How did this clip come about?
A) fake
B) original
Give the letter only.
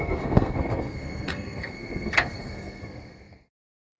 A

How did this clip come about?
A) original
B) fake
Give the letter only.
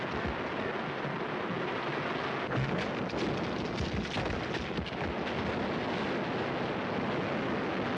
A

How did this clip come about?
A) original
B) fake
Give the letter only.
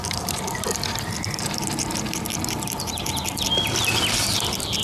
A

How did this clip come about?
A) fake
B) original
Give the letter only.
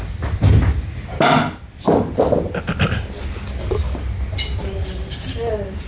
B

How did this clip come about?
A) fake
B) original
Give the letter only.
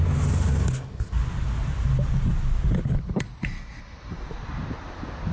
B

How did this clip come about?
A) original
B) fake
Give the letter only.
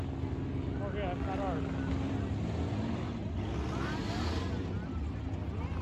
A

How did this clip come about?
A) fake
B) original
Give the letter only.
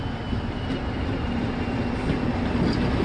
B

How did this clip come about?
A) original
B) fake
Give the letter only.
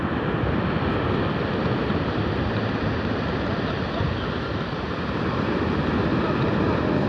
A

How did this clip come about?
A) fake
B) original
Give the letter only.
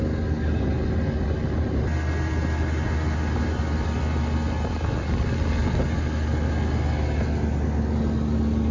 B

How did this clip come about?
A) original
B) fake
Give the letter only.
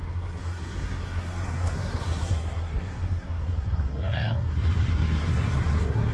B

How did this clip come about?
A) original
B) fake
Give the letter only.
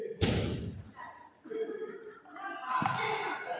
B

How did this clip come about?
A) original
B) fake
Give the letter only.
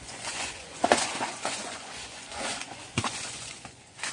B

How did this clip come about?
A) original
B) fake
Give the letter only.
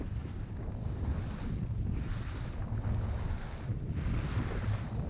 A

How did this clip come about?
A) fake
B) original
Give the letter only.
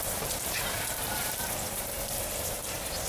A